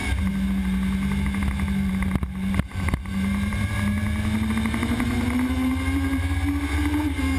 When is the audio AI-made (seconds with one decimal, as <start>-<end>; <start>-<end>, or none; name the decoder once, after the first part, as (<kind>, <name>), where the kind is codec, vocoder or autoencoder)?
none